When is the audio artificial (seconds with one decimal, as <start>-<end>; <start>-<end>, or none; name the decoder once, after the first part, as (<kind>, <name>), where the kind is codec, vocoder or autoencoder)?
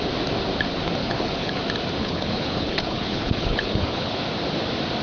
1.0-1.6 (codec, HILCodec); 2.0-4.2